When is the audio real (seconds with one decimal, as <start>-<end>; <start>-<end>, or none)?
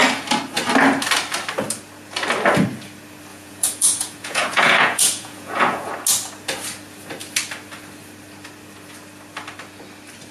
0.0-3.3; 5.9-10.3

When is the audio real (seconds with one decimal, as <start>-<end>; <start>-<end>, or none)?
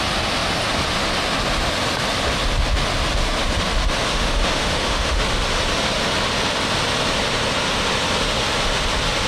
0.0-4.1; 5.2-9.3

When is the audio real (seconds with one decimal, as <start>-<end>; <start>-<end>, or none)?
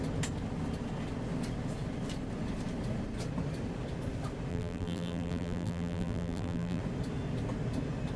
0.0-4.5; 6.8-8.2